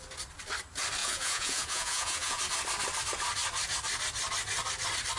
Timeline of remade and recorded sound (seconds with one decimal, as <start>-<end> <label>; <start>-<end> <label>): 0.0-1.0 recorded; 1.0-2.4 remade; 2.4-5.2 recorded